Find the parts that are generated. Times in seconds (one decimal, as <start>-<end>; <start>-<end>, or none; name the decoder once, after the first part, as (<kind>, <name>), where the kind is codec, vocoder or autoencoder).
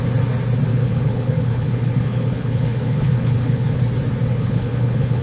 0.7-3.8 (codec, HILCodec); 4.3-5.2